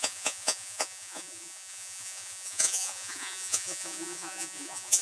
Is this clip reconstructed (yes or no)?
yes